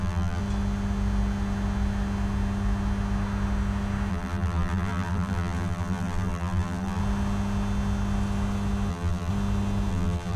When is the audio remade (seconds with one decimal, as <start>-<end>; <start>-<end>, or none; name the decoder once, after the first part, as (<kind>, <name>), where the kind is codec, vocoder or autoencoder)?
0.0-0.4 (vocoder, BigVGAN v2); 4.1-7.0; 8.9-9.3; 9.9-10.4